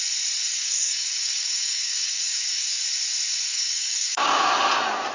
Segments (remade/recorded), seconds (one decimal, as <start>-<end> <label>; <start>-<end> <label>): 0.0-0.5 recorded; 0.5-2.8 remade; 2.8-3.5 recorded; 3.5-4.5 remade; 4.5-5.1 recorded